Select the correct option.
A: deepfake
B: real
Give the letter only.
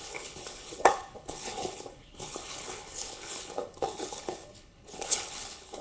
A